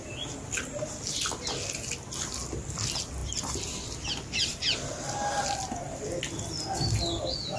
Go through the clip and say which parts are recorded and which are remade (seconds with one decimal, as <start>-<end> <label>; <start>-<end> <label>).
0.0-7.6 recorded